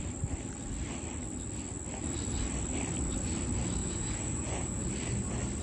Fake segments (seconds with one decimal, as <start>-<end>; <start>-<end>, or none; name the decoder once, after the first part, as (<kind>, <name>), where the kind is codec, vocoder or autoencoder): 3.8-4.8 (vocoder, Vocos)